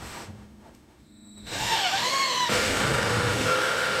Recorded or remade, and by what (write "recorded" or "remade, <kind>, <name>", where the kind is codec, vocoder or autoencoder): remade, autoencoder, DAC-VAE